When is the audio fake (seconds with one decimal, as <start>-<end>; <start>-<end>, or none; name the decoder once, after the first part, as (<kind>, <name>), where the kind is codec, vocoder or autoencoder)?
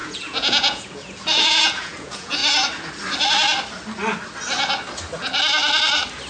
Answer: 0.0-2.4 (vocoder, Vocos)